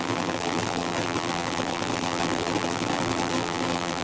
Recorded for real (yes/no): no